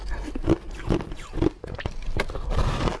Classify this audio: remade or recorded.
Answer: recorded